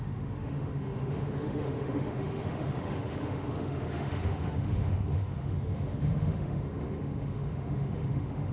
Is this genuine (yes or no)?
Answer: no